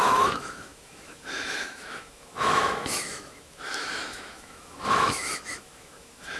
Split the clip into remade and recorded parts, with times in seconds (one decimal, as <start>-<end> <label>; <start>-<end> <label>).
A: 0.0-6.4 remade